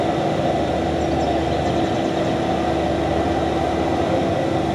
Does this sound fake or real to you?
real